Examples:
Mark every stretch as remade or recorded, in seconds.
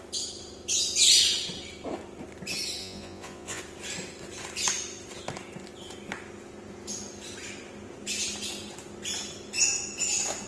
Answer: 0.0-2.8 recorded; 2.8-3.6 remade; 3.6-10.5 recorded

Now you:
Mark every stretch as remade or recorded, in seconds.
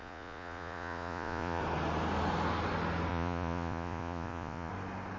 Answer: 0.0-1.6 remade; 1.6-3.1 recorded; 3.1-4.7 remade; 4.7-5.2 recorded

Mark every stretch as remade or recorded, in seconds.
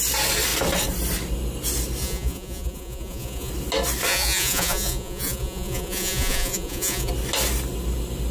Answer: 0.0-2.0 recorded; 2.0-3.5 remade; 3.5-4.1 recorded; 4.1-7.1 remade; 7.1-8.3 recorded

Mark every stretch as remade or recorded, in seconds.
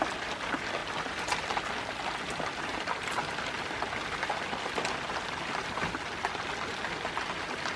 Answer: 0.0-7.8 recorded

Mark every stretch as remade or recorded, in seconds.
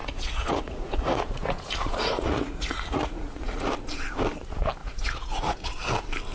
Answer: 0.0-3.7 remade; 3.7-4.8 recorded; 4.8-5.7 remade; 5.7-6.3 recorded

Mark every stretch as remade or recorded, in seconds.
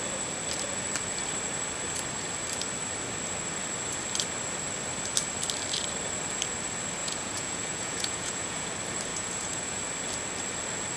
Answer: 0.0-7.0 recorded; 7.0-8.7 remade; 8.7-9.1 recorded; 9.1-9.8 remade; 9.8-11.0 recorded